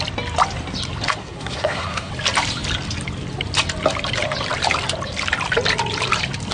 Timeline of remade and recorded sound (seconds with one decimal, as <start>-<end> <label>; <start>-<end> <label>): 0.0-1.2 recorded; 1.2-2.1 remade; 2.1-6.5 recorded